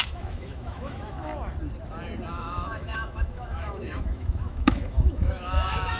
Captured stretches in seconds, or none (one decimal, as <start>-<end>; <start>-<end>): 1.3-2.3